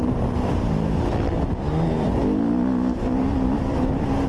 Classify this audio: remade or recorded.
recorded